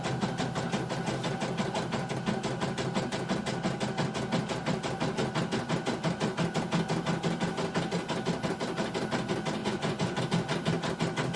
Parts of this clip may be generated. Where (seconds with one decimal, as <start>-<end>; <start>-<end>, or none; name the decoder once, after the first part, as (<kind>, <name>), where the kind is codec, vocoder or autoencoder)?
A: 9.6-10.2 (vocoder, Vocos)

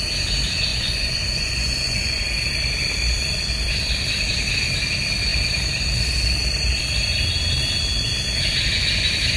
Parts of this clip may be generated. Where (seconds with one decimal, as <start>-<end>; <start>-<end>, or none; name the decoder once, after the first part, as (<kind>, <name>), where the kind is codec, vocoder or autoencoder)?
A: 0.7-2.2 (vocoder, Vocos)

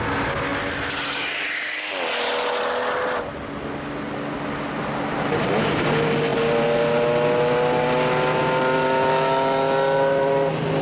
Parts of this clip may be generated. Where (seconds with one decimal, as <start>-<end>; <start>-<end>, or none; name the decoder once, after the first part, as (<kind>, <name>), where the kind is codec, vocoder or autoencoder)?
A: none

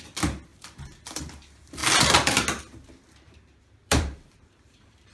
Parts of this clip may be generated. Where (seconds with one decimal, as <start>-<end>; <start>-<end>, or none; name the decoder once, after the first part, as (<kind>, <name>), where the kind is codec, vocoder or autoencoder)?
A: 0.5-1.2 (vocoder, BigVGAN v2); 3.8-5.1